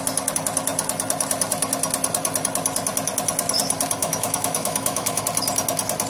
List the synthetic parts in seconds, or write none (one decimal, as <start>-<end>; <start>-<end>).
4.0-5.2